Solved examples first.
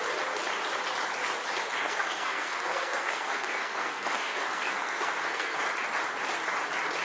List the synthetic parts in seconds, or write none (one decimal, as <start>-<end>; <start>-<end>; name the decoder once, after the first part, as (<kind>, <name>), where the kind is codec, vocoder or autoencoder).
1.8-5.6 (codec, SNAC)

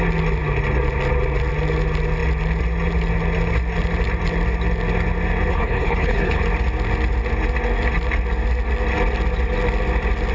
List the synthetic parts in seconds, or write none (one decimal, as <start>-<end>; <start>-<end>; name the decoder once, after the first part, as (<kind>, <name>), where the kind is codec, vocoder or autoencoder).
5.5-6.4 (codec, HILCodec)

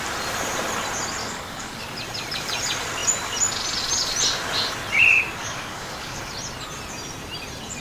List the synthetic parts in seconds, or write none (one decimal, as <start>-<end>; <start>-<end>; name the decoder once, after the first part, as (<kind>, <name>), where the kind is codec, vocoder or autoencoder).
1.2-1.8 (codec, DAC); 5.4-6.3